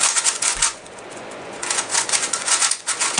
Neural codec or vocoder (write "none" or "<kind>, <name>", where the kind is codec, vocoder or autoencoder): vocoder, Vocos